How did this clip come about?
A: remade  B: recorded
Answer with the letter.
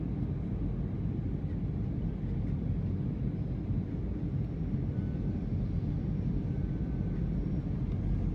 B